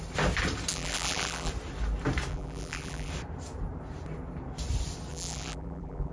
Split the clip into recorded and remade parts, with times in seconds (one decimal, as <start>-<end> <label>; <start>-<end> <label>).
0.0-0.7 recorded; 0.7-1.5 remade; 1.5-2.3 recorded; 2.3-3.1 remade; 3.1-5.1 recorded; 5.1-6.1 remade